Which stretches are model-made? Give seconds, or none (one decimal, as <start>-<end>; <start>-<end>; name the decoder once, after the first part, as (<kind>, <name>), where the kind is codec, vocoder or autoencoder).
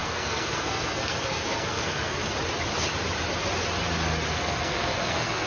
0.0-2.2 (codec, SNAC); 4.3-5.5